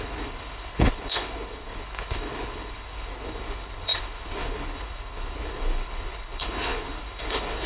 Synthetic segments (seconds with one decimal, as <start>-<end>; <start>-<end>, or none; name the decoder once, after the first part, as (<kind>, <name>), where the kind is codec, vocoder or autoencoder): 0.0-7.7 (codec, HILCodec)